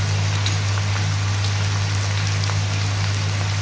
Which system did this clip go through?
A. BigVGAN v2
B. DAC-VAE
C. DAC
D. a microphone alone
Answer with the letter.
D